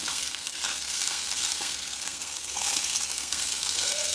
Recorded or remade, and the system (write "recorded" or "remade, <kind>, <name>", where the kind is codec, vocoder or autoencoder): remade, codec, SNAC